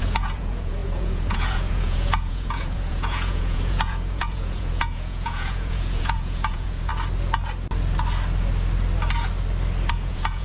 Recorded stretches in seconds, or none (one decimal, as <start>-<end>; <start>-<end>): 6.9-9.9